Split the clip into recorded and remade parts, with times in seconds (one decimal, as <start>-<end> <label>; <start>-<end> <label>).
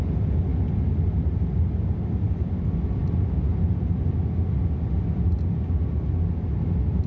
0.0-7.1 recorded